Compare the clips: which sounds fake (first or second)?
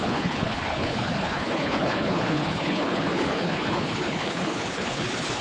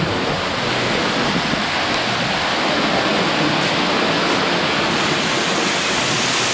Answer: first